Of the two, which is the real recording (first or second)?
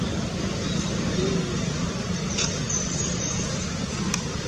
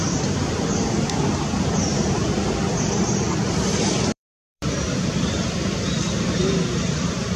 first